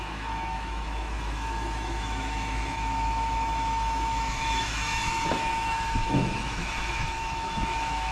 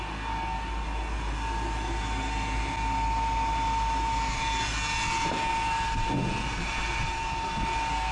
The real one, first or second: second